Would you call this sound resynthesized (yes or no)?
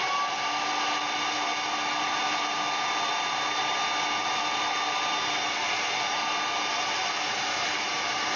no